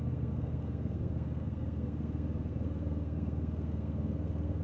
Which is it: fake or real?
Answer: fake